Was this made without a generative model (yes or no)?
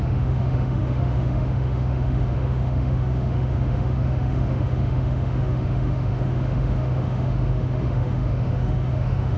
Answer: no